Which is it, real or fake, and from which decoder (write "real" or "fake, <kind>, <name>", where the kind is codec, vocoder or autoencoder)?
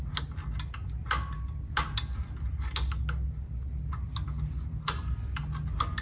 real